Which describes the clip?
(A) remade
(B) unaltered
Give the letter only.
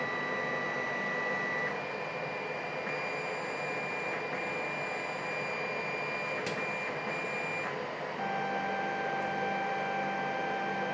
B